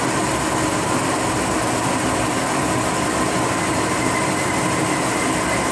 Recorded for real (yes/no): yes